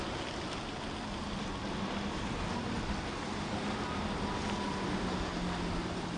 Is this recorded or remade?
recorded